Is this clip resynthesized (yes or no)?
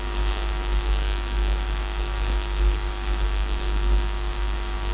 yes